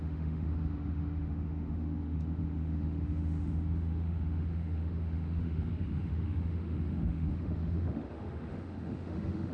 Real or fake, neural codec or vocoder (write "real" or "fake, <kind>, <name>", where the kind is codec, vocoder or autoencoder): fake, autoencoder, DAC-VAE